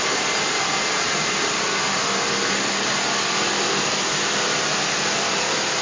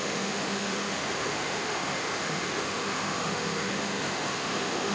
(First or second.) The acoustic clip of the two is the first